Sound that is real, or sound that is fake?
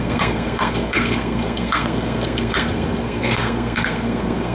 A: fake